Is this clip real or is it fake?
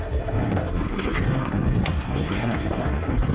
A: fake